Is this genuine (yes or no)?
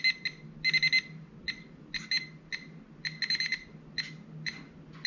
yes